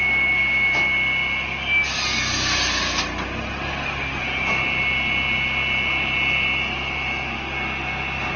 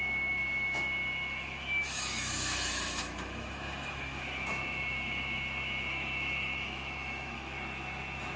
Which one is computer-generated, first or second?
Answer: second